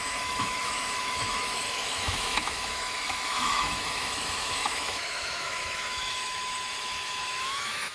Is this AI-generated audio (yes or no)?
yes